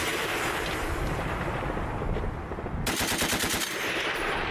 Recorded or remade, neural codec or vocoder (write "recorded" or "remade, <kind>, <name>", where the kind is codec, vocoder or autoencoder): recorded